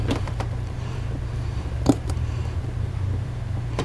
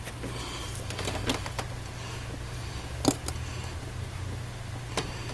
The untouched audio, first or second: second